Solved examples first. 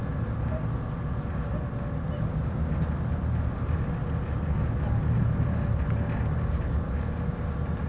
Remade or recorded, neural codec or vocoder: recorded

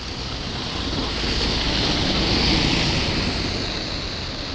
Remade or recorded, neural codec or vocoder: recorded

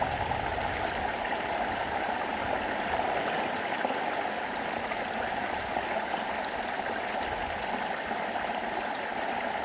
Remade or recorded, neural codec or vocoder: recorded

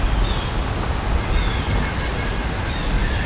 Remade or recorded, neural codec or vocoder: recorded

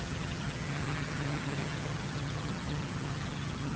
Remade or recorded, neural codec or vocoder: remade, vocoder, HiFi-GAN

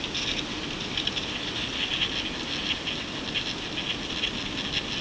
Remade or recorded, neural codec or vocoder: recorded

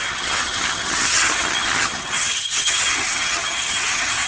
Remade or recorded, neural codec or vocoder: remade, vocoder, HiFi-GAN